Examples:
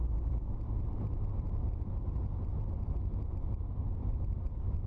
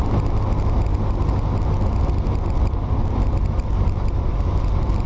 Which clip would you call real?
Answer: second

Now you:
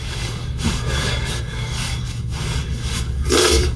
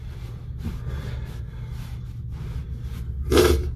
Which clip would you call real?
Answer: second